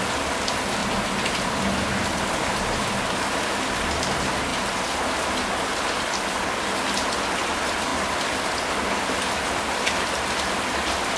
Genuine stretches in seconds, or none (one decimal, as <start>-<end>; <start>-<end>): 0.8-2.2; 4.5-6.2